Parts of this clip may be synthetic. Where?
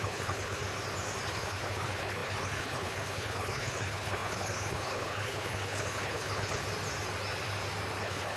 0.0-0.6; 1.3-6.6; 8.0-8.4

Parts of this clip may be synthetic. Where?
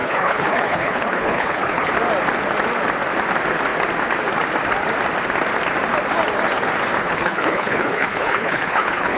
0.0-1.9; 7.0-9.2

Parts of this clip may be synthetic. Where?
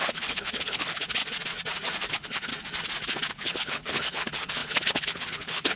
0.0-1.2; 2.1-2.5; 3.3-5.8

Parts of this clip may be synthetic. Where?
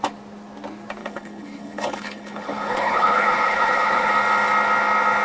1.0-4.1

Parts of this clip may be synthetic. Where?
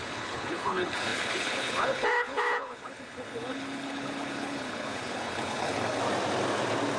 0.0-6.0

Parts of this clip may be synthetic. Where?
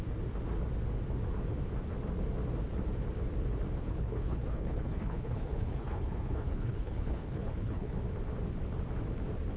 3.8-8.0